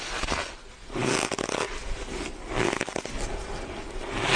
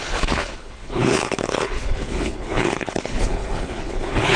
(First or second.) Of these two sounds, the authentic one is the first